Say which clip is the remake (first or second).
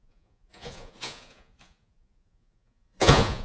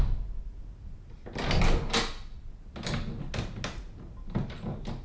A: first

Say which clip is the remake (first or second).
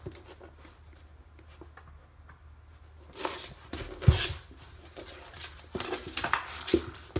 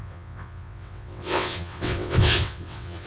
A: second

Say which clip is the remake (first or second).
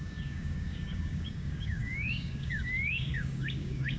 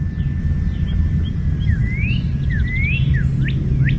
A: first